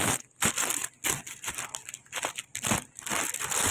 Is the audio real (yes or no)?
yes